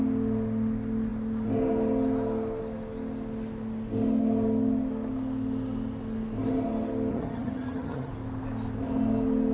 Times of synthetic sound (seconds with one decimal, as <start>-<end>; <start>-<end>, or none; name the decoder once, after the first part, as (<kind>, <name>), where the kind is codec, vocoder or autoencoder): 7.1-8.1 (vocoder, HiFi-GAN)